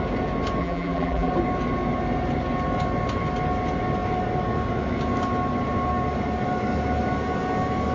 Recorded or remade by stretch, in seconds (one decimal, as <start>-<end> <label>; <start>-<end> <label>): 0.0-0.6 recorded; 0.6-1.3 remade; 1.3-7.9 recorded